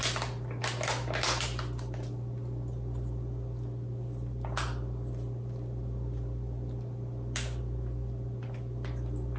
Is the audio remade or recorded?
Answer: recorded